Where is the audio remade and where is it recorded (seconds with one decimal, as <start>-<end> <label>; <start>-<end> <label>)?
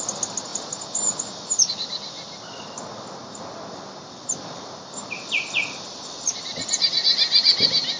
0.0-8.0 recorded